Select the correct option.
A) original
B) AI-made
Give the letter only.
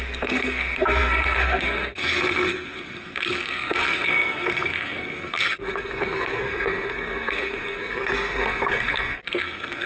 B